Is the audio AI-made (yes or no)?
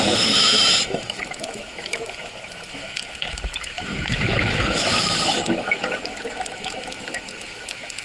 yes